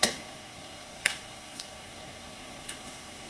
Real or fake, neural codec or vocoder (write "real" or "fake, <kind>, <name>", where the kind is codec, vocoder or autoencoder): fake, codec, SNAC